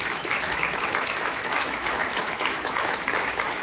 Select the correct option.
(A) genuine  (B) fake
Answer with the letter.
B